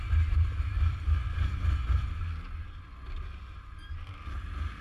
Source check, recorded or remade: recorded